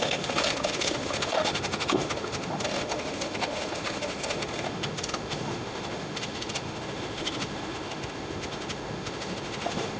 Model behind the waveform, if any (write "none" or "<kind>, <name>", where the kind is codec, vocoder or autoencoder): autoencoder, DAC-VAE